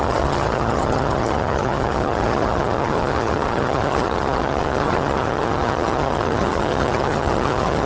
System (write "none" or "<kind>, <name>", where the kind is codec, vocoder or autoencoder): vocoder, HiFi-GAN